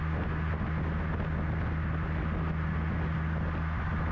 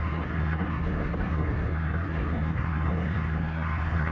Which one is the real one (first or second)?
first